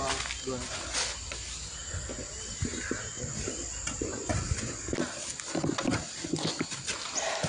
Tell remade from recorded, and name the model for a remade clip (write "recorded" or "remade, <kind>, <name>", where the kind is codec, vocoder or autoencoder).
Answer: recorded